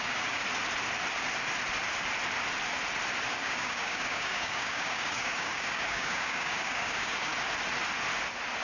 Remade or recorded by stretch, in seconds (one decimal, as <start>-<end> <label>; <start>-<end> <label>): 0.0-0.4 remade; 0.4-3.3 recorded; 3.3-7.3 remade; 7.3-8.6 recorded